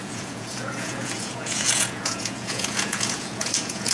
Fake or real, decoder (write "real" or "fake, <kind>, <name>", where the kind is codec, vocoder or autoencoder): fake, vocoder, Vocos